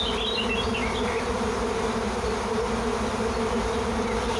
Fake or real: real